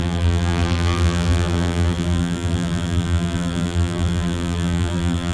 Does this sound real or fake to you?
fake